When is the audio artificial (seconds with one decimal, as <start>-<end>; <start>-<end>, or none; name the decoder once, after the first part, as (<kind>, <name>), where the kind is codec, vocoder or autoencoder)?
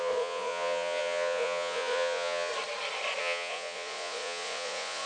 0.0-2.5 (vocoder, Vocos); 3.2-5.1